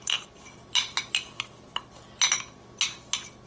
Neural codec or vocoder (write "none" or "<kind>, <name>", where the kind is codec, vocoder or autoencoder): none